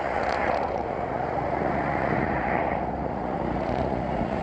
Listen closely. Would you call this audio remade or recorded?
remade